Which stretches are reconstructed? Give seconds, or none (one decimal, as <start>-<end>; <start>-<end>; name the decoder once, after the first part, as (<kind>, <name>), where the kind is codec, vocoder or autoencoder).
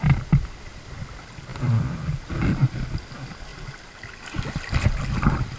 none